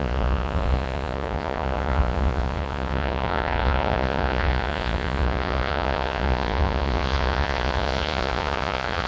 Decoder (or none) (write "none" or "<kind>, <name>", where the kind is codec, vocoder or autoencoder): vocoder, Vocos